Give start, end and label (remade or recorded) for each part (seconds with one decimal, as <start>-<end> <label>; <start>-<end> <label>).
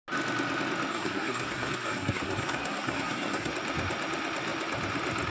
0.0-0.9 recorded; 0.9-3.5 remade; 3.5-5.3 recorded